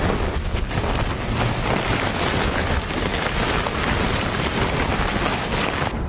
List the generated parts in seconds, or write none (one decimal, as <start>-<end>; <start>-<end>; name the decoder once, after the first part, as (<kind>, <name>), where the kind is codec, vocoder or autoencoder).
none